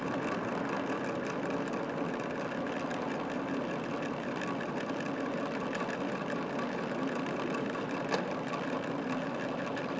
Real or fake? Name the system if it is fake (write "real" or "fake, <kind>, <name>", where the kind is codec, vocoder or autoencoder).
real